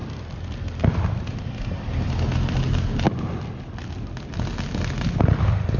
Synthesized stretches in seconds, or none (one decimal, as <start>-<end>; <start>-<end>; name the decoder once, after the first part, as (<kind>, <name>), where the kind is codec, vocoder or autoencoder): none